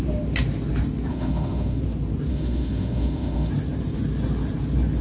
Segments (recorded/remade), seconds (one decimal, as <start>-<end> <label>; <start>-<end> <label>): 0.0-1.1 recorded; 1.1-1.8 remade; 1.8-2.3 recorded; 2.3-3.5 remade; 3.5-5.0 recorded